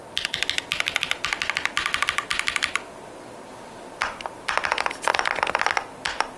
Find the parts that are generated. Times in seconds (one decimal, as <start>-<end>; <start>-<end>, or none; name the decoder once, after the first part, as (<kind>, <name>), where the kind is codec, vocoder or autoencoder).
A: 3.8-5.1 (vocoder, BigVGAN v2); 5.7-6.4